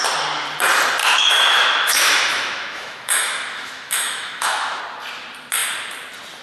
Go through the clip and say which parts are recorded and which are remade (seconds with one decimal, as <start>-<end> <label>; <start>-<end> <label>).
0.0-1.0 recorded; 1.0-4.8 remade; 4.8-6.4 recorded